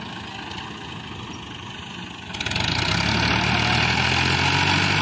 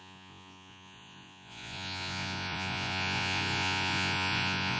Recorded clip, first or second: first